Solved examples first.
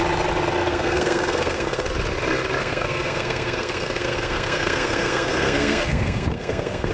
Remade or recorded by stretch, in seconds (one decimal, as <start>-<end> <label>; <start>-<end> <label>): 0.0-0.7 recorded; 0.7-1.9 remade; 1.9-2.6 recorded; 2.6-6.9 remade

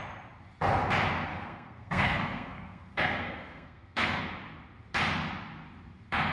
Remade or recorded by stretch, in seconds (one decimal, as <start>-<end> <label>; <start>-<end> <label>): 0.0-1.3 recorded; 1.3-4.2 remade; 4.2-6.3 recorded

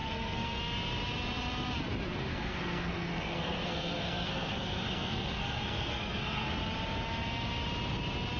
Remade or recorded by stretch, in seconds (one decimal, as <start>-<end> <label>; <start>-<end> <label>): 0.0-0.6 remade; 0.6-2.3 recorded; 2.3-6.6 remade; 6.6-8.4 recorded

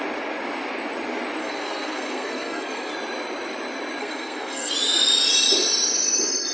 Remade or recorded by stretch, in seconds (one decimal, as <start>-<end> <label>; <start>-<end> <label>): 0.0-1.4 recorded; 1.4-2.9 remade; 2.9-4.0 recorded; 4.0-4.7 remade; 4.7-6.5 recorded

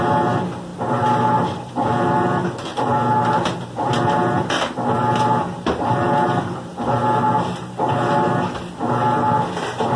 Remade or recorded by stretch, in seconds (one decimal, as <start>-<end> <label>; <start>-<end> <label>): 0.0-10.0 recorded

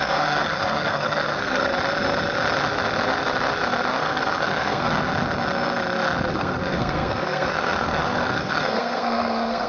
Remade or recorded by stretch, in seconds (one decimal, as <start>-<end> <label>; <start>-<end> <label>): 0.0-1.7 remade; 1.7-4.0 recorded; 4.0-5.1 remade; 5.1-6.3 recorded; 6.3-9.7 remade